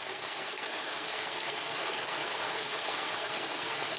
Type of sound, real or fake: fake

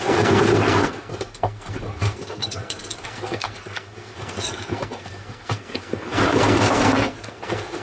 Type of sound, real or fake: fake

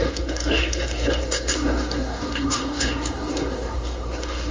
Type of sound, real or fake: fake